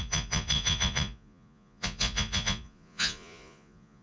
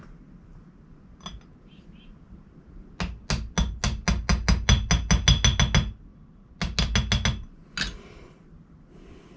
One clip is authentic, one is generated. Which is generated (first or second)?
first